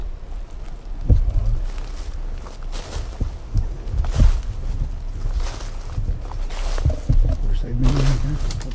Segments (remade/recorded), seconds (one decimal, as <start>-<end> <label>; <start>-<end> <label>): 0.0-8.7 recorded

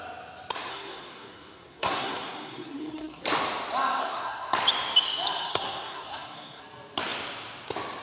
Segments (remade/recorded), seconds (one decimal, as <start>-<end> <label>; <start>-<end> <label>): 0.0-0.7 recorded; 0.7-3.2 remade; 3.2-4.0 recorded; 4.0-4.5 remade; 4.5-5.5 recorded; 5.5-6.6 remade; 6.6-8.0 recorded

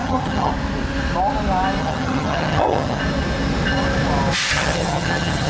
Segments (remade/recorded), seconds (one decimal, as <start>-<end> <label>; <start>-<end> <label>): 0.0-0.5 remade; 0.5-1.8 recorded; 1.8-3.0 remade; 3.0-4.5 recorded; 4.5-5.5 remade

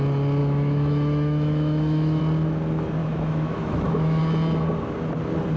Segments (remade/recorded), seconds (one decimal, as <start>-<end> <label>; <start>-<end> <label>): 0.0-0.4 recorded; 0.4-2.2 remade; 2.2-3.0 recorded; 3.0-4.2 remade; 4.2-5.6 recorded

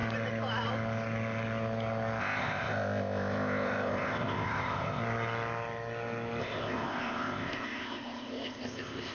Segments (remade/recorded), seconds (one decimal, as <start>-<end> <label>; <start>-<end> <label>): 0.0-2.2 recorded; 2.2-5.0 remade; 5.0-6.4 recorded; 6.4-9.1 remade

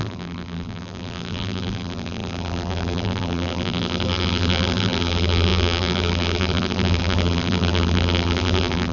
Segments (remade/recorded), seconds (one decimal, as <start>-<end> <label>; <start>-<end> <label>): 0.0-8.9 remade

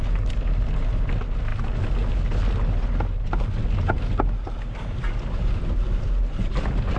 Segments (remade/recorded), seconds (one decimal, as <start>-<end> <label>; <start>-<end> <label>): 0.0-7.0 recorded

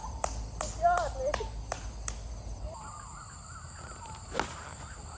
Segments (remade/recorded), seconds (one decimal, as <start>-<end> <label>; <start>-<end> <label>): 0.0-5.2 recorded